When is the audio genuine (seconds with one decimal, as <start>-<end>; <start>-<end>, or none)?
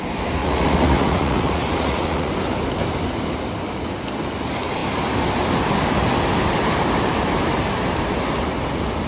0.0-0.4; 2.3-9.1